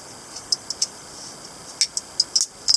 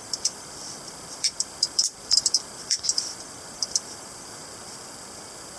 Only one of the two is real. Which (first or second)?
first